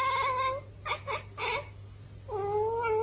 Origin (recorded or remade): recorded